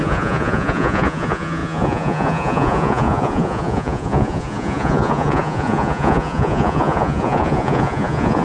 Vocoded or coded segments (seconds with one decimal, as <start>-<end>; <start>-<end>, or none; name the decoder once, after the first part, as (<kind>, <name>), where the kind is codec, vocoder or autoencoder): 0.0-8.4 (vocoder, Vocos)